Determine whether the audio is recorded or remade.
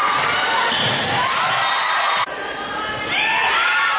recorded